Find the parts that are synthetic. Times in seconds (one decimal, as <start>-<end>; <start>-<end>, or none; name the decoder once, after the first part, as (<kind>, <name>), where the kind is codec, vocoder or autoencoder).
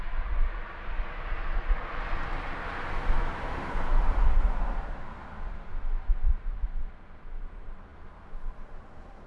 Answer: none